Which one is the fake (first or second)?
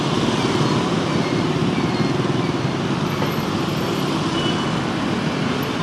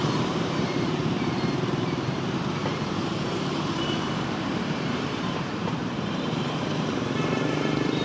second